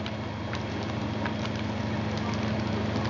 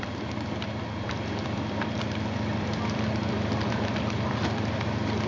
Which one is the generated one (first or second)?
second